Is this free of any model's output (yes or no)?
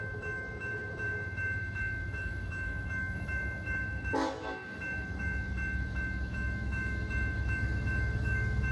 no